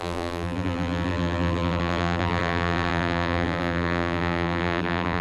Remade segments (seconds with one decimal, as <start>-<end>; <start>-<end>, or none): 0.0-5.2